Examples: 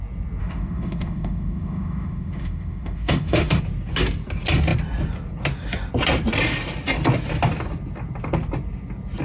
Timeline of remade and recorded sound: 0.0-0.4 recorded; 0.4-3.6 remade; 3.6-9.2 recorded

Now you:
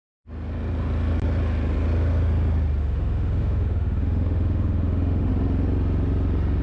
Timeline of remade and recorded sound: 0.0-2.8 recorded; 2.8-5.3 remade; 5.3-6.6 recorded

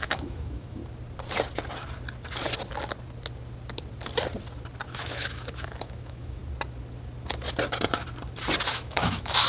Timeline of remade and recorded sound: 0.0-0.8 remade; 0.8-4.9 recorded; 4.9-6.4 remade; 6.4-8.7 recorded; 8.7-9.5 remade

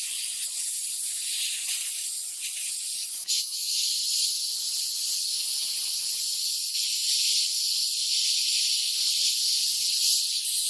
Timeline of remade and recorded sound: 0.0-3.2 recorded; 3.2-3.8 remade; 3.8-10.7 recorded

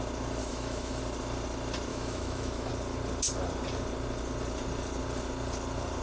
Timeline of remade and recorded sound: 0.0-0.4 recorded; 0.4-1.0 remade; 1.0-1.9 recorded; 1.9-2.7 remade; 2.7-6.0 recorded

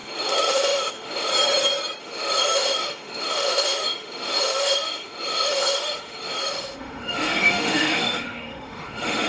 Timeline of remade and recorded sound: 0.0-1.3 remade; 1.3-2.0 recorded; 2.0-9.3 remade

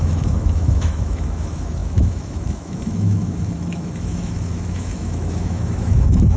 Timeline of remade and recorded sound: 0.0-6.4 remade

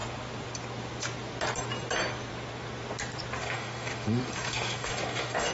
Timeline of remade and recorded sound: 0.0-3.4 recorded; 3.4-5.5 remade